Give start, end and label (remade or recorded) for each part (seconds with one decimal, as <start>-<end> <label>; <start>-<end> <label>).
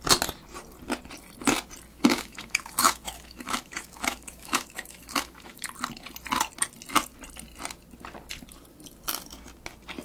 0.0-1.9 recorded; 1.9-5.7 remade; 5.7-10.0 recorded